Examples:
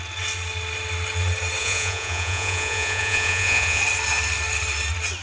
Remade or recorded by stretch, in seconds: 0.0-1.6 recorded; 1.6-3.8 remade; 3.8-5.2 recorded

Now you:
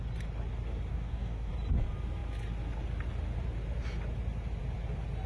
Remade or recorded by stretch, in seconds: 0.0-0.9 recorded; 0.9-1.5 remade; 1.5-5.3 recorded

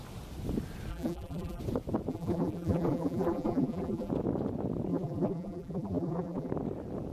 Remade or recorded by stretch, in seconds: 0.0-0.9 recorded; 0.9-1.6 remade; 1.6-2.1 recorded; 2.1-4.1 remade; 4.1-4.9 recorded; 4.9-6.5 remade; 6.5-7.1 recorded

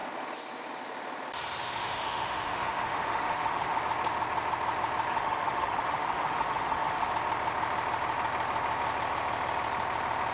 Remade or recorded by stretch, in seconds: 0.0-1.6 recorded; 1.6-3.8 remade; 3.8-5.1 recorded; 5.1-7.1 remade; 7.1-10.3 recorded

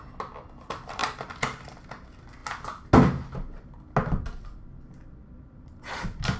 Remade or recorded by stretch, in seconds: 0.0-1.0 recorded; 1.0-1.8 remade; 1.8-6.4 recorded

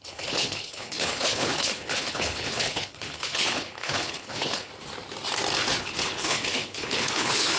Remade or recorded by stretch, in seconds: 0.0-4.7 remade; 4.7-5.8 recorded; 5.8-7.6 remade

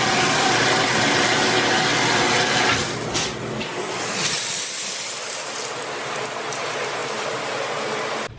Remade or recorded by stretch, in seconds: 0.0-8.4 recorded